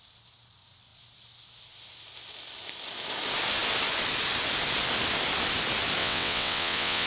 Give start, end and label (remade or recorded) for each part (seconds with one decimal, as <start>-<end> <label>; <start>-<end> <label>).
0.0-6.0 recorded; 6.0-7.1 remade